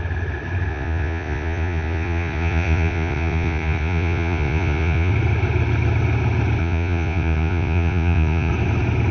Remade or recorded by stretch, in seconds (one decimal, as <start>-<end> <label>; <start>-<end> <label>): 0.0-0.7 recorded; 0.7-5.1 remade; 5.1-6.6 recorded; 6.6-8.5 remade; 8.5-9.1 recorded